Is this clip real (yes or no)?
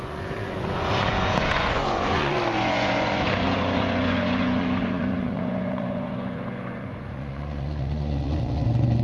no